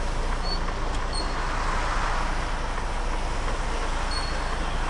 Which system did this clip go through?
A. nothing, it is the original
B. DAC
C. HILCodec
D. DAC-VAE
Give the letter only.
A